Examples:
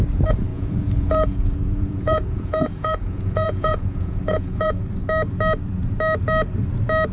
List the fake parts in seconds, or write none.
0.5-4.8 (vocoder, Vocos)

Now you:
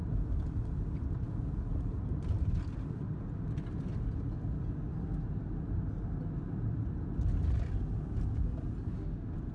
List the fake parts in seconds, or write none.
none

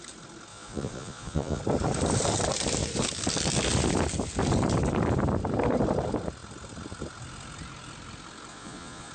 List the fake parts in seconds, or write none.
0.5-1.6 (vocoder, Vocos); 8.5-9.1